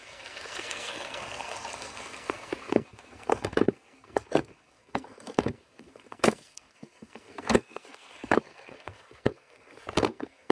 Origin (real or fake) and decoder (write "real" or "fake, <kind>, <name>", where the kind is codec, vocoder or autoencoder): fake, codec, SNAC